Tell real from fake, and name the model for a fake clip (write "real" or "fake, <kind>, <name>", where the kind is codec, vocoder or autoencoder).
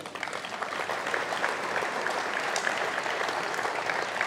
fake, vocoder, BigVGAN v2